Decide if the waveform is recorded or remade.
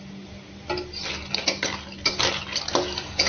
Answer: recorded